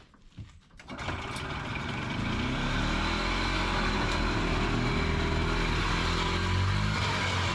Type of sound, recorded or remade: recorded